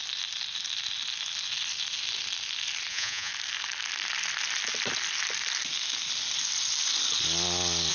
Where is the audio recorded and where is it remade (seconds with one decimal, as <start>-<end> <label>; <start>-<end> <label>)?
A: 0.0-2.9 recorded; 2.9-3.3 remade; 3.3-7.9 recorded

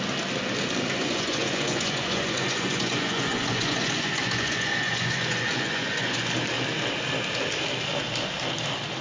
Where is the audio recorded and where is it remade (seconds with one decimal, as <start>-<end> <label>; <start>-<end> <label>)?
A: 0.0-1.0 recorded; 1.0-6.3 remade; 6.3-9.0 recorded

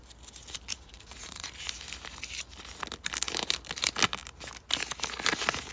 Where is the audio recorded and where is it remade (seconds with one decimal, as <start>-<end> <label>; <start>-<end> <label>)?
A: 0.0-0.7 recorded; 0.7-1.5 remade; 1.5-5.7 recorded

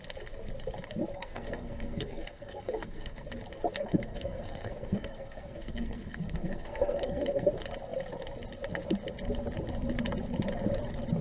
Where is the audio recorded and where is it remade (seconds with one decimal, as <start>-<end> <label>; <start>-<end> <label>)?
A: 0.0-1.1 recorded; 1.1-3.3 remade; 3.3-3.8 recorded; 3.8-7.5 remade; 7.5-11.2 recorded

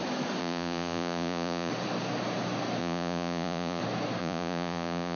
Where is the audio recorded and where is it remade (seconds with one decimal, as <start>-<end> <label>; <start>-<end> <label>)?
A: 0.0-0.4 recorded; 0.4-1.7 remade; 1.7-2.8 recorded; 2.8-3.8 remade; 3.8-4.2 recorded; 4.2-5.2 remade

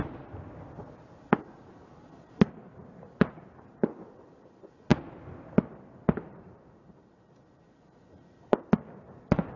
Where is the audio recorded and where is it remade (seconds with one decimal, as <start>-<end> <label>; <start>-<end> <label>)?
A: 0.0-9.6 recorded

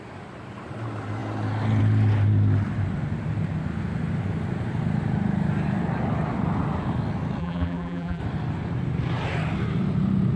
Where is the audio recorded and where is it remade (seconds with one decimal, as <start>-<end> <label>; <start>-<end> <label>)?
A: 0.0-7.4 recorded; 7.4-8.2 remade; 8.2-10.4 recorded